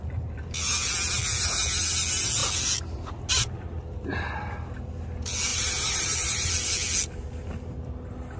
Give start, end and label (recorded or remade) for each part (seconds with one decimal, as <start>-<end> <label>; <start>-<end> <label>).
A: 0.0-5.5 recorded; 5.5-6.5 remade; 6.5-8.4 recorded